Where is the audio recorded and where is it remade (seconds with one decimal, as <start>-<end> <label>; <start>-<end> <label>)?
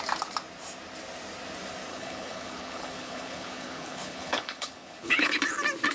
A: 0.0-1.9 recorded; 1.9-5.4 remade; 5.4-5.9 recorded